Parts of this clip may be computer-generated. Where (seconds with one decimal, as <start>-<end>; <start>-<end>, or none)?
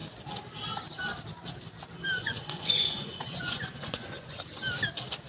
2.2-4.4